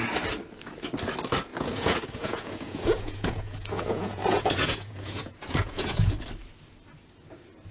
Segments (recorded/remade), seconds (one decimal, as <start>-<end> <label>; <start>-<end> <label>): 0.0-1.5 recorded; 1.5-6.1 remade; 6.1-7.7 recorded